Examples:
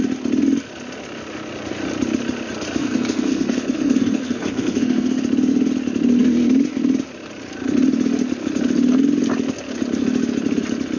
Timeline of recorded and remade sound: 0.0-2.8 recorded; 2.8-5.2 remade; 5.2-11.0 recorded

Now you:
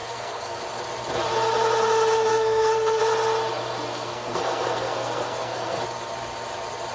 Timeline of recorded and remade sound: 0.0-0.6 remade; 0.6-2.3 recorded; 2.3-3.0 remade; 3.0-3.9 recorded; 3.9-5.8 remade; 5.8-6.9 recorded

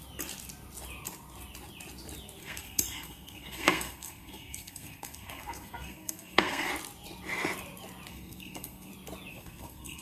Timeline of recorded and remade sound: 0.0-2.4 recorded; 2.4-6.7 remade; 6.7-8.1 recorded; 8.1-8.9 remade; 8.9-9.3 recorded; 9.3-10.0 remade

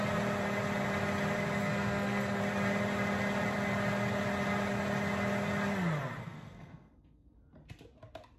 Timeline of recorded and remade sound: 0.0-1.6 recorded; 1.6-2.4 remade; 2.4-6.2 recorded; 6.2-7.5 remade; 7.5-8.4 recorded

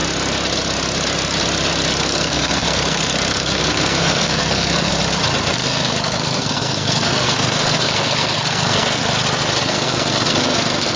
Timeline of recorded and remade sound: 0.0-2.0 recorded; 2.0-4.9 remade; 4.9-5.5 recorded; 5.5-9.0 remade; 9.0-9.6 recorded; 9.6-11.0 remade

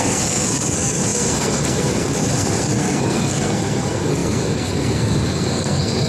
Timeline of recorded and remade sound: 0.0-6.1 remade